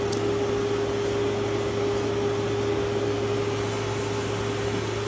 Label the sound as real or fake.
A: real